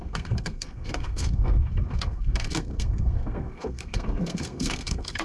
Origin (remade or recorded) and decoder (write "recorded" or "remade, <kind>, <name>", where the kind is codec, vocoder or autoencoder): remade, codec, SNAC